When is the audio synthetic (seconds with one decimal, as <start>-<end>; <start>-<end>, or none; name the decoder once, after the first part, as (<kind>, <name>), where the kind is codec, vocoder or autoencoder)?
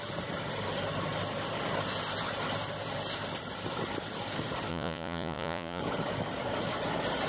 4.7-5.8 (vocoder, Vocos)